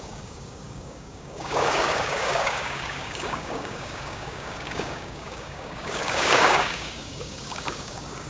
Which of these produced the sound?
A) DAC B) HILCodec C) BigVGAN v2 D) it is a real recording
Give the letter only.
A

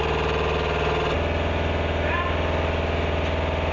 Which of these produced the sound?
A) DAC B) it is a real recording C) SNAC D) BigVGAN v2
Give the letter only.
B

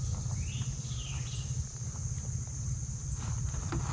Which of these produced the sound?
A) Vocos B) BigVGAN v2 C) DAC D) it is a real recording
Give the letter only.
D